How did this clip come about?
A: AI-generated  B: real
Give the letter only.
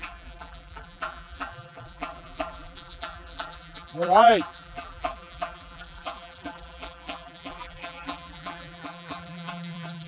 A